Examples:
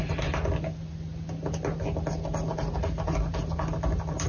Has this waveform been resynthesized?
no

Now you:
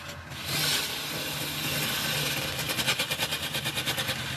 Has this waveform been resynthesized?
no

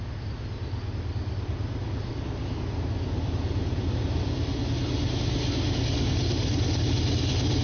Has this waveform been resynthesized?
no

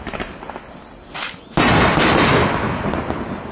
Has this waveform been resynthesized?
no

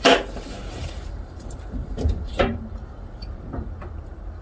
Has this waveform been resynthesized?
yes